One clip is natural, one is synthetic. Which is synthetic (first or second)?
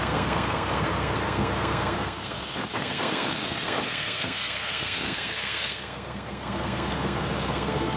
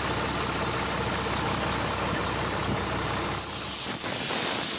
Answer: first